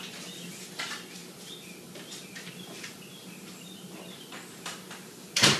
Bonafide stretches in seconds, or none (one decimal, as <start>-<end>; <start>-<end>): 0.0-5.6